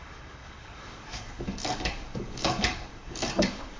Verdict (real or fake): fake